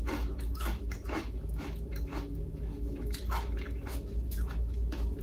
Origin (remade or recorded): remade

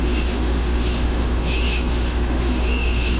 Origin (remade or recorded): remade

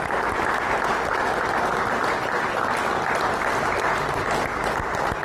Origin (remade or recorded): recorded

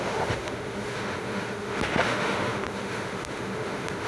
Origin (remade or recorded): remade